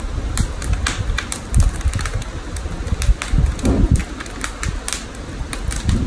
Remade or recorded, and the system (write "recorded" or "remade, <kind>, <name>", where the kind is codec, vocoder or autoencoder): recorded